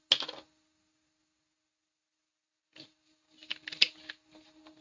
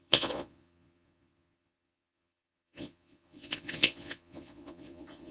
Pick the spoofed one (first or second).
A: second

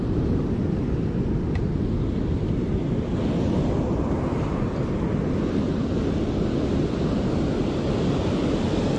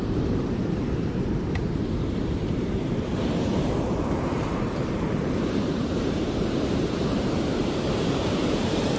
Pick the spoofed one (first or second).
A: second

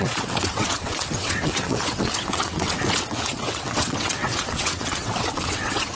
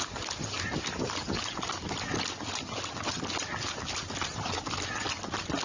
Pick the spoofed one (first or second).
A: first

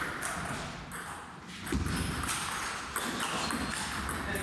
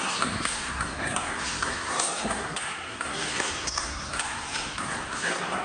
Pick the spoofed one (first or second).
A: second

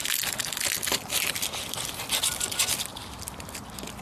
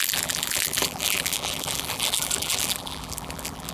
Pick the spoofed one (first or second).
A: second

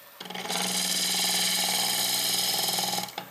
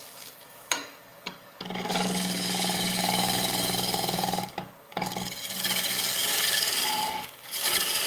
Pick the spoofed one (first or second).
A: second